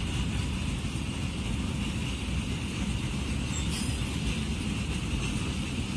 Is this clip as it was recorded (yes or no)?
yes